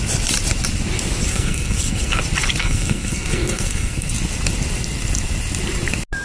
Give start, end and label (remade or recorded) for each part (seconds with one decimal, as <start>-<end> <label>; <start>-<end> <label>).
0.0-1.3 recorded; 1.3-2.2 remade; 2.2-2.6 recorded; 2.6-4.1 remade; 4.1-6.2 recorded